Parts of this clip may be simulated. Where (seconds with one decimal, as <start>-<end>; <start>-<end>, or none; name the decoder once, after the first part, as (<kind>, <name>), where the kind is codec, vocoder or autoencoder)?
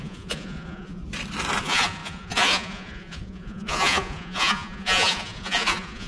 0.0-1.0 (vocoder, Vocos); 1.6-6.1